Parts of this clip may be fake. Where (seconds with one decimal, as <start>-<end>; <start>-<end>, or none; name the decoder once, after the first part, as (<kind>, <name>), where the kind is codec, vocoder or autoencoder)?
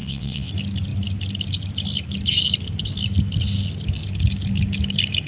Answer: 0.0-0.5 (vocoder, WaveNeXt)